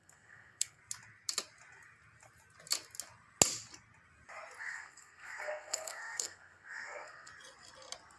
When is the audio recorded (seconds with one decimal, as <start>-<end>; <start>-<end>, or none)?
0.8-4.6; 7.3-8.2